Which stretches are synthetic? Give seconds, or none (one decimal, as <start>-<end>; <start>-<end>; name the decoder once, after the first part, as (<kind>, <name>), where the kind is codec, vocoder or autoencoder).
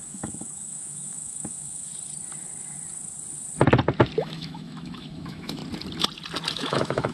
0.0-1.9 (autoencoder, DAC-VAE); 4.2-5.6; 6.5-7.1